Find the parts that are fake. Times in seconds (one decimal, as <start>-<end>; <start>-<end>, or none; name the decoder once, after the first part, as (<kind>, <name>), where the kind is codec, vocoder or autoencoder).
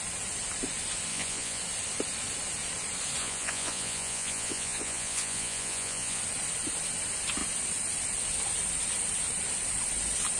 1.1-1.6 (vocoder, Vocos); 3.2-6.2